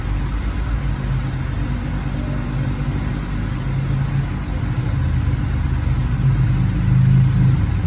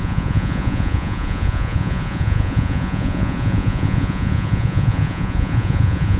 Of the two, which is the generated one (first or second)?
second